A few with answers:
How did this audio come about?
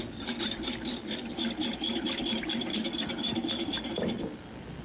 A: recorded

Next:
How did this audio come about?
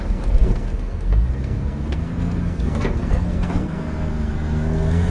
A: remade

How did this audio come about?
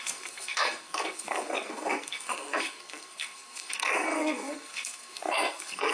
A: remade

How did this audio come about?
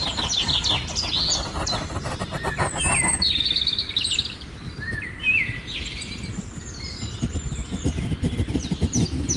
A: recorded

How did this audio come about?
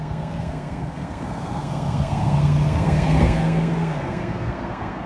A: remade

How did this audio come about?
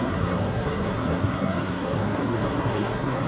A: remade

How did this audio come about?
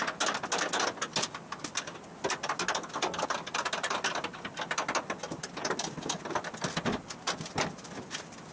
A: recorded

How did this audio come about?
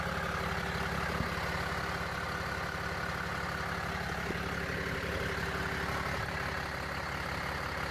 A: recorded